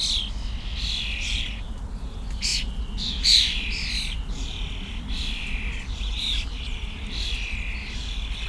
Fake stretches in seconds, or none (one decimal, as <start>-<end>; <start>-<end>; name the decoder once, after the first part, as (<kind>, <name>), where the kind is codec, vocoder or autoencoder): none